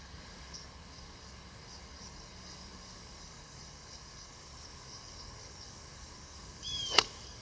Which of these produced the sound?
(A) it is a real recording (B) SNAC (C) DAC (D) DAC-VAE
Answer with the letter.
C